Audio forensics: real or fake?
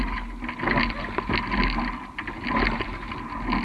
real